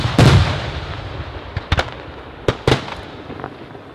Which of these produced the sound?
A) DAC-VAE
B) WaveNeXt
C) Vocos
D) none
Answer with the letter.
D